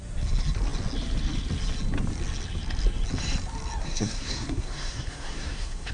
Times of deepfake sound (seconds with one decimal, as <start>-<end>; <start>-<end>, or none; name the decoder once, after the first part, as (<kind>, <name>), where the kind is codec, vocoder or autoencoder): 3.8-5.9 (codec, SNAC)